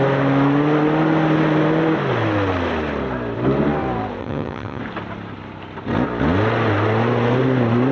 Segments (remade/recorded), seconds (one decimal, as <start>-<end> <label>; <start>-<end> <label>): 0.0-4.2 recorded; 4.2-4.8 remade; 4.8-7.9 recorded